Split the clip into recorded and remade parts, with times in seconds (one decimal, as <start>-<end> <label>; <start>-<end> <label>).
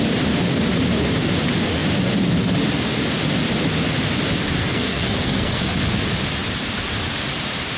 0.0-4.6 recorded; 4.6-5.7 remade; 5.7-7.8 recorded